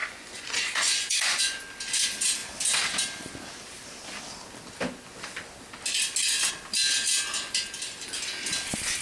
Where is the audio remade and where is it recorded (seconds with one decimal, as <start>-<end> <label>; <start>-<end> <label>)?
0.0-1.6 remade; 1.6-9.0 recorded